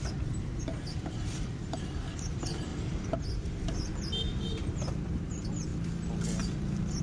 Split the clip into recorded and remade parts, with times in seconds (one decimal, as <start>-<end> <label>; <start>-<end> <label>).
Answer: 0.0-5.7 remade; 5.7-7.0 recorded

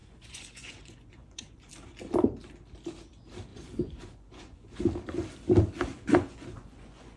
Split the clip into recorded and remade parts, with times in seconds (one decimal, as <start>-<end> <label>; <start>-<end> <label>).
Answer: 0.0-1.7 remade; 1.7-3.5 recorded; 3.5-4.8 remade; 4.8-5.9 recorded; 5.9-7.2 remade

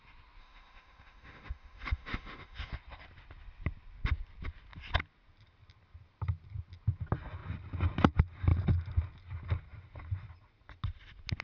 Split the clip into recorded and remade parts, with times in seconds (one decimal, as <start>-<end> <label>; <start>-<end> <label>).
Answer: 0.0-0.4 recorded; 0.4-2.7 remade; 2.7-11.4 recorded

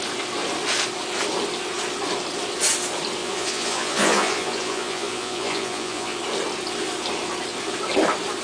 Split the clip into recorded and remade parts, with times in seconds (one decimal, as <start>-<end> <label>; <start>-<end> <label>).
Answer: 0.0-3.2 recorded; 3.2-6.2 remade; 6.2-8.4 recorded

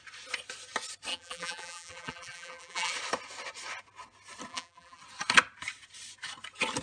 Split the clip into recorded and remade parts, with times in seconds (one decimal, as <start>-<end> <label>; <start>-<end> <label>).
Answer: 0.0-1.1 recorded; 1.1-2.9 remade; 2.9-4.5 recorded; 4.5-5.0 remade; 5.0-6.8 recorded

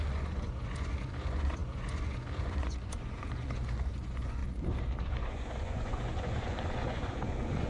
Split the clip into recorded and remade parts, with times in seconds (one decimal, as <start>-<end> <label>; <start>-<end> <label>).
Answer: 0.0-4.4 remade; 4.4-5.1 recorded; 5.1-7.7 remade